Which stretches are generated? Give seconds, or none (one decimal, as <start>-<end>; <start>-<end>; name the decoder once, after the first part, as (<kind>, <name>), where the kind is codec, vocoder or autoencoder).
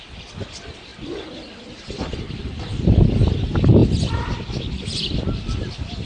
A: none